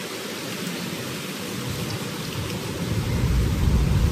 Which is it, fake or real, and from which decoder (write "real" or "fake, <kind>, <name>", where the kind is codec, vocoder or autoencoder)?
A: real